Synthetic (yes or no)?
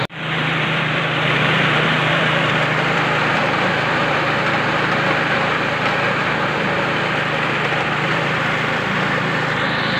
yes